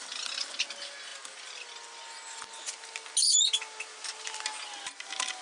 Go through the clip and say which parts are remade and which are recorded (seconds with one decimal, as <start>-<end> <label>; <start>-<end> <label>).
0.0-5.4 recorded

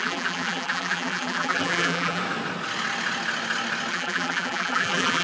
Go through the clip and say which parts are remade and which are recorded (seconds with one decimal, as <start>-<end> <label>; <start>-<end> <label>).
0.0-2.2 remade; 2.2-3.9 recorded; 3.9-5.2 remade

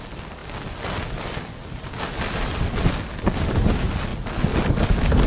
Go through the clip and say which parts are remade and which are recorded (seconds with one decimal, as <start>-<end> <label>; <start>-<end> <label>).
0.0-5.3 recorded